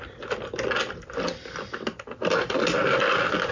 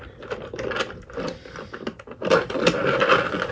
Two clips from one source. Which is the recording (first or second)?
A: first